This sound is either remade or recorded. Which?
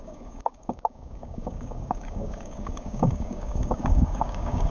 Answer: remade